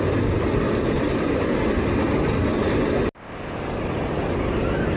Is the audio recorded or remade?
recorded